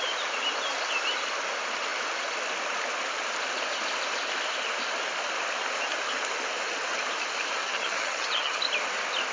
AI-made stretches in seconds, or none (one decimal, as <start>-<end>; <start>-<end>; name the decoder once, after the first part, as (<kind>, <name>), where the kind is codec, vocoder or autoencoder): 7.6-8.6 (vocoder, HiFi-GAN)